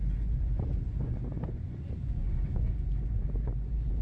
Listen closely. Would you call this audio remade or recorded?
remade